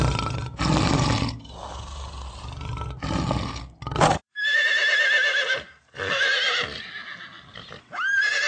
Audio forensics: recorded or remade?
recorded